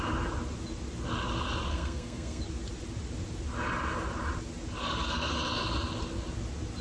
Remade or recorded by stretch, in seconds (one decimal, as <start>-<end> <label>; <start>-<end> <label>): 0.0-1.7 recorded; 1.7-2.4 remade; 2.4-4.8 recorded; 4.8-5.3 remade; 5.3-6.8 recorded